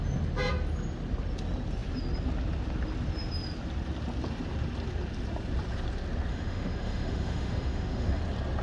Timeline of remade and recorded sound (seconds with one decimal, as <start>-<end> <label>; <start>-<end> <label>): 0.0-6.3 recorded; 6.3-8.2 remade; 8.2-8.6 recorded

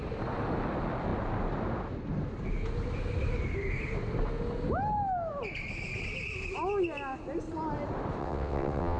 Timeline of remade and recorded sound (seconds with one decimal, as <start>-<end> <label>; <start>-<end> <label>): 0.0-8.2 recorded; 8.2-9.0 remade

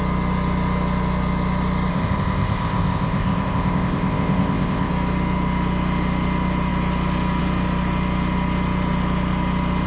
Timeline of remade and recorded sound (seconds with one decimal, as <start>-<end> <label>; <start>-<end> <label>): 0.0-1.9 recorded; 1.9-4.9 remade; 4.9-9.9 recorded

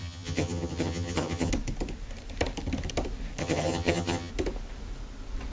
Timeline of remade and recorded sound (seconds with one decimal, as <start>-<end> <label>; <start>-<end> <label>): 0.0-1.5 remade; 1.5-3.4 recorded; 3.4-4.3 remade; 4.3-5.5 recorded

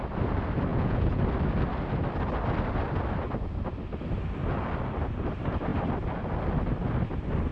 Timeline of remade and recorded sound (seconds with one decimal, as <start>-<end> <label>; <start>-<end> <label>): 0.0-0.7 recorded; 0.7-1.2 remade; 1.2-7.5 recorded